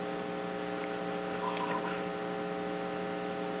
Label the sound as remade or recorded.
recorded